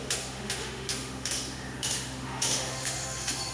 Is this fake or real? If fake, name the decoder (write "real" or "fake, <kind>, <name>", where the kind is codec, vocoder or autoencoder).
fake, autoencoder, DAC-VAE